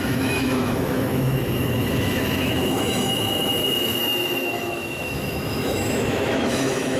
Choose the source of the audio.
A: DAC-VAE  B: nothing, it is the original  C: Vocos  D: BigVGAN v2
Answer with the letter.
A